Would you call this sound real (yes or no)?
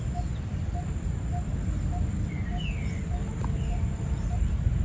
yes